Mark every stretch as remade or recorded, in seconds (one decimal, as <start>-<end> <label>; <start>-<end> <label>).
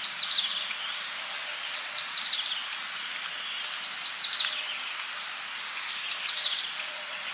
0.0-6.4 recorded; 6.4-7.3 remade